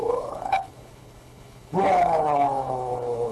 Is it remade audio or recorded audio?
remade